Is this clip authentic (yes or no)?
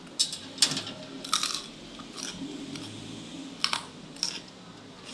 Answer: yes